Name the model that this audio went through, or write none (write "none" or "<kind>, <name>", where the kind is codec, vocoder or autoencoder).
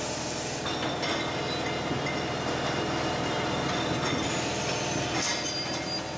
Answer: none